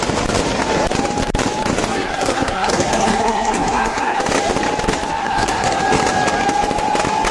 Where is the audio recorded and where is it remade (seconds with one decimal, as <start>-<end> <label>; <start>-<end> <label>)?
0.0-1.9 recorded; 1.9-4.2 remade; 4.2-5.2 recorded; 5.2-5.8 remade; 5.8-7.3 recorded